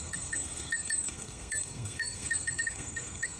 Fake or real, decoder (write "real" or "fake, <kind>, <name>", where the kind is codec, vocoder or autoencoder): fake, codec, SNAC